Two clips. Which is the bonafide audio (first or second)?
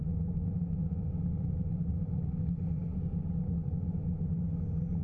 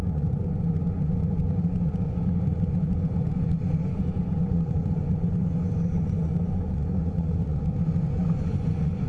first